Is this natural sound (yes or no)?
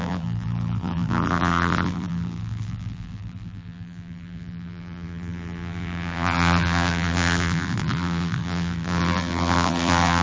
no